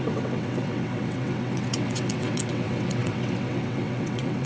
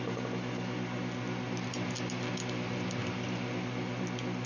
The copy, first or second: first